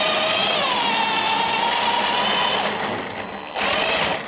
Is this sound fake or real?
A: real